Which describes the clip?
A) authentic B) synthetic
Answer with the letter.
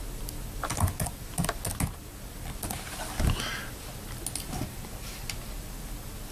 A